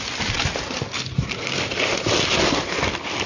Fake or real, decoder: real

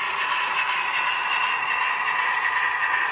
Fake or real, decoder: real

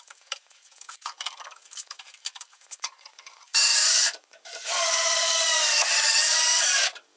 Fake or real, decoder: fake, codec, DAC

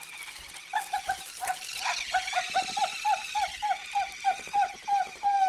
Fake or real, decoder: real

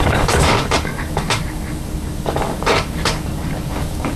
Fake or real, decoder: fake, codec, DAC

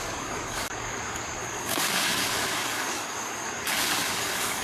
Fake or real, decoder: fake, codec, DAC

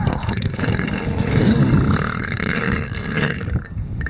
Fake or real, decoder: fake, codec, DAC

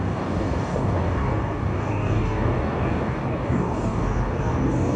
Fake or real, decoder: fake, codec, DAC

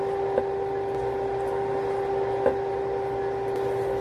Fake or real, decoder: real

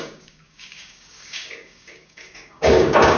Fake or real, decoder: fake, codec, DAC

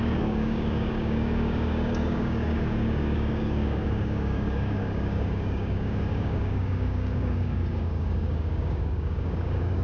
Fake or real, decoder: fake, codec, DAC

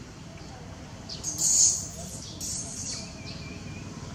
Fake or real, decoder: real